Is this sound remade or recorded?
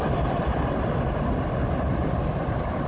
recorded